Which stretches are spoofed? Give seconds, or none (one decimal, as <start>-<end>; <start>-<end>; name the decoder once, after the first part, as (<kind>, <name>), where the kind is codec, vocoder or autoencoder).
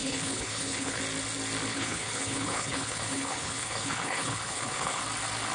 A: 0.0-1.0 (codec, HILCodec); 1.7-5.0